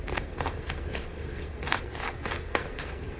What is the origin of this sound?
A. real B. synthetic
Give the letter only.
B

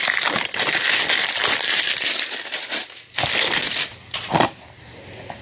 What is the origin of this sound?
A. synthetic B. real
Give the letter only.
B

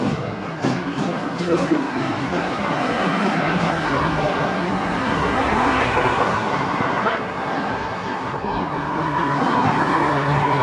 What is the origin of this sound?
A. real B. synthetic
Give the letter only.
B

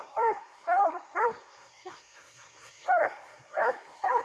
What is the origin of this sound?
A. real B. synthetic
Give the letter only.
B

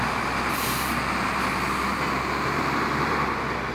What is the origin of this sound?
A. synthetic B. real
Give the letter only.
B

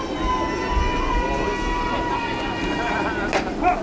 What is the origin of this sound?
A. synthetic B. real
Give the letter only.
B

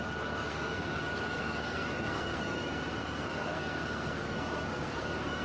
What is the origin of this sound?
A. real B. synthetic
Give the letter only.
B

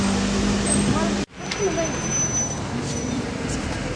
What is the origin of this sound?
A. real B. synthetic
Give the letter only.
A